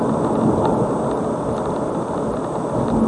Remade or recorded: recorded